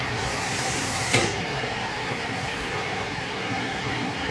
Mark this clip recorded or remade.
remade